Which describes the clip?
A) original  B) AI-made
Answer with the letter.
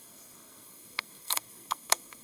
B